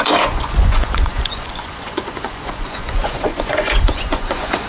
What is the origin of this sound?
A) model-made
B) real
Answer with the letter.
A